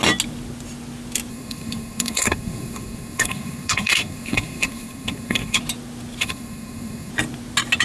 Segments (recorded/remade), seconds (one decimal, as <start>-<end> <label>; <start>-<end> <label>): 0.0-1.3 recorded; 1.3-5.6 remade; 5.6-6.2 recorded; 6.2-7.1 remade; 7.1-7.8 recorded